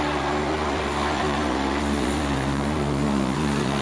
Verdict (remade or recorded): remade